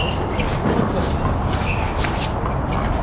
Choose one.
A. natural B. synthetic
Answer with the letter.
A